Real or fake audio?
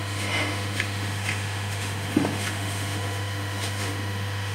fake